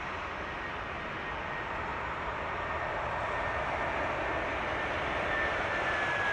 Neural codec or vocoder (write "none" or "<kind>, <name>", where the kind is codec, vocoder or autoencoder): none